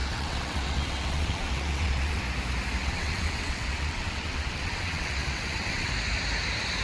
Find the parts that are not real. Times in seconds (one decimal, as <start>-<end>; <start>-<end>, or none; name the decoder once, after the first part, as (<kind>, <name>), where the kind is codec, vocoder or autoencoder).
0.0-2.2 (vocoder, WaveNeXt); 2.8-5.9